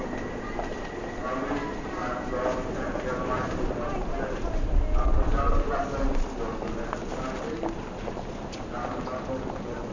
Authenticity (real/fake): real